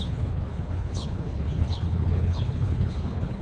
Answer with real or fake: fake